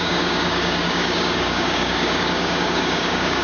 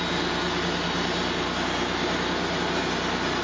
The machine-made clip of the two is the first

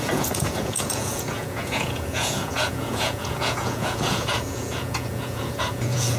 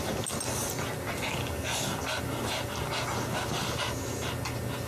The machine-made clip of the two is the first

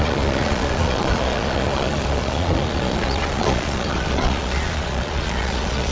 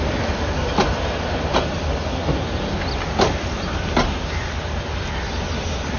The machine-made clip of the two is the first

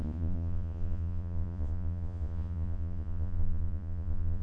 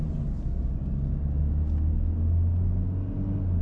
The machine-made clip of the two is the first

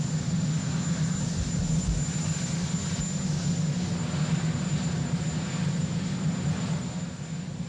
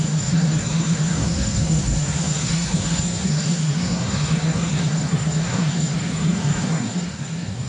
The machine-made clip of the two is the second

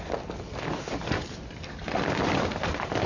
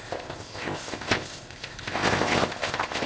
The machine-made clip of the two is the second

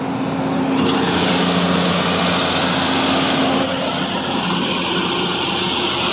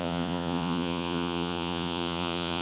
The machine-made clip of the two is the second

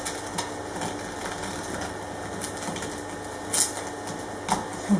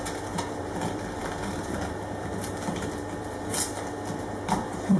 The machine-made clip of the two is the second